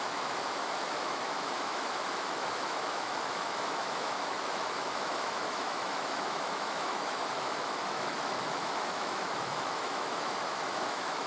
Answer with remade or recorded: remade